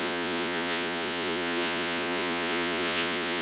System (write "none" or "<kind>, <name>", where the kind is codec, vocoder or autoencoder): vocoder, Vocos